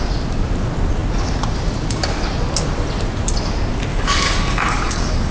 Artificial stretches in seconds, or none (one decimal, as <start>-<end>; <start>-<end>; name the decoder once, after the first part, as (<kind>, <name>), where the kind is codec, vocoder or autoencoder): 3.9-5.3 (codec, DAC)